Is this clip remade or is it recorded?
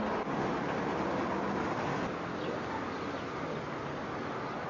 recorded